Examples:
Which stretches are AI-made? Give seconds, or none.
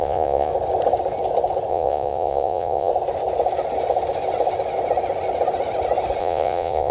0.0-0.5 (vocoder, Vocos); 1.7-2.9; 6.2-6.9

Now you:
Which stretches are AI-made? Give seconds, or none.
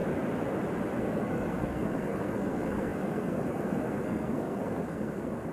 1.0-5.5 (codec, SNAC)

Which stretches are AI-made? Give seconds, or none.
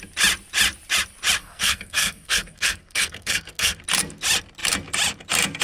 1.4-3.8 (codec, SNAC)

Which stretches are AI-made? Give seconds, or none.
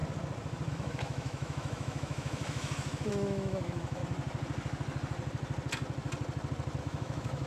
0.7-4.0 (autoencoder, DAC-VAE); 6.8-7.5